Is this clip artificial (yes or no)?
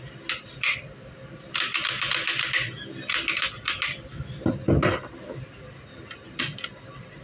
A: no